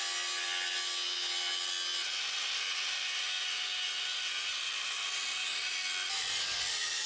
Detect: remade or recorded recorded